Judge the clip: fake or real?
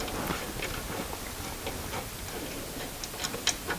real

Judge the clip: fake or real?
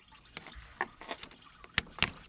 real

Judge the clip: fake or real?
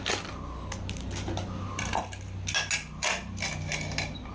real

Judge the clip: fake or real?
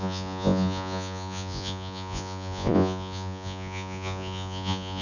fake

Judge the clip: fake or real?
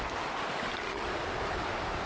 real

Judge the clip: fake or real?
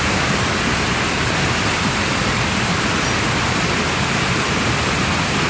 real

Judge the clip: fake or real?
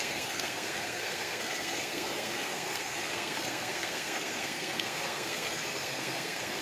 fake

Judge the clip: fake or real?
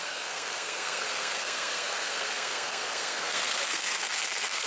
fake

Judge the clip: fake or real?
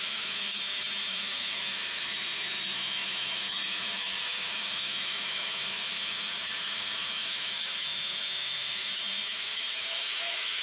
fake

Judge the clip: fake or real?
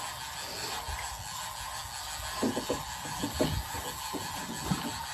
real